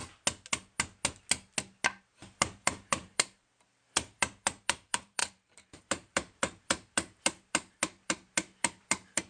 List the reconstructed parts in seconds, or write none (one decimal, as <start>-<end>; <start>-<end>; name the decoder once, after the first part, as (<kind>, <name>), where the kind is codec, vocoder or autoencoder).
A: 2.0-9.3 (vocoder, BigVGAN v2)